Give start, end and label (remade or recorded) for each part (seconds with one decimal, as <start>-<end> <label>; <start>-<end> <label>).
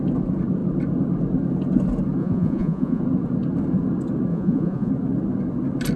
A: 0.0-2.2 recorded; 2.2-3.0 remade; 3.0-4.3 recorded; 4.3-4.9 remade; 4.9-6.0 recorded